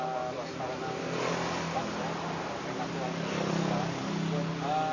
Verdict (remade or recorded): recorded